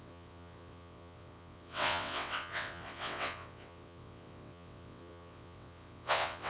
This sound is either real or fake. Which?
fake